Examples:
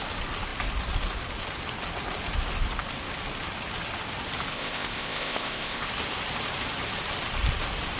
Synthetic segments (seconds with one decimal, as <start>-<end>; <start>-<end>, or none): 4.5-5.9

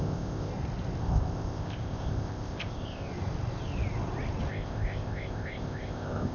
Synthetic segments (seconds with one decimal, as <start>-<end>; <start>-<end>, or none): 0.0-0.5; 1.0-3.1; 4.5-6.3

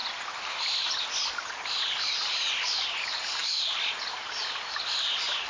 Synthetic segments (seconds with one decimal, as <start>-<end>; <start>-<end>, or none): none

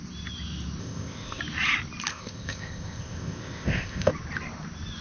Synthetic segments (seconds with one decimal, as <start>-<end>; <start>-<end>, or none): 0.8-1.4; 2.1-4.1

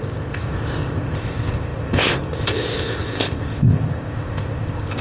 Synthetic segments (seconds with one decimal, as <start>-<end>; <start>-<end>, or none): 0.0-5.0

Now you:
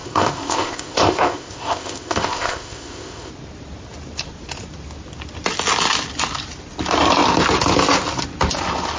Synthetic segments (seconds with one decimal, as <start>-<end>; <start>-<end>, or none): 0.0-3.3

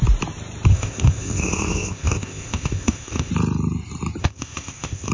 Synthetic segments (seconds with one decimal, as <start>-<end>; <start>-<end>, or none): 0.7-3.3; 4.2-5.1